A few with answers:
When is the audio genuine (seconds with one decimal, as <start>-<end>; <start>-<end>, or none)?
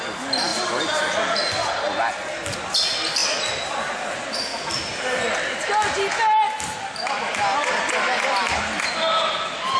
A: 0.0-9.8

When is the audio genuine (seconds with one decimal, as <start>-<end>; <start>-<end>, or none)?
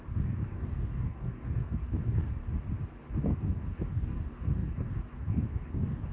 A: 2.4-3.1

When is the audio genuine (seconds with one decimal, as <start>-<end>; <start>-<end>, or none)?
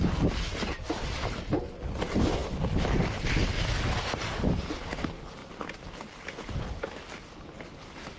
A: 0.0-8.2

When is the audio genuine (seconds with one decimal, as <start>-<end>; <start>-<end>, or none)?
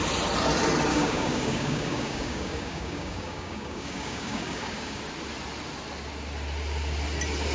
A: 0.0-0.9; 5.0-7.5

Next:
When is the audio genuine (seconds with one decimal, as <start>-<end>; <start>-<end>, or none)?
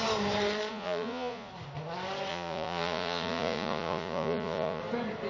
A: 0.0-0.7; 1.5-2.3; 4.8-5.3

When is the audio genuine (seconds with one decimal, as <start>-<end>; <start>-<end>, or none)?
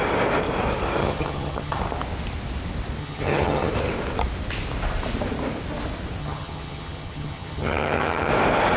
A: 0.0-1.0; 1.8-3.0; 3.7-6.2; 8.3-8.8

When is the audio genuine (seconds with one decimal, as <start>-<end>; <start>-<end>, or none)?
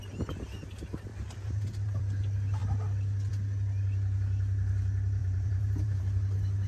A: 0.0-1.1; 2.0-5.2; 6.0-6.7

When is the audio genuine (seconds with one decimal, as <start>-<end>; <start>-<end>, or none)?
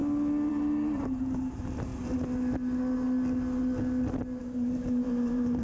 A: 0.0-0.5; 1.9-4.4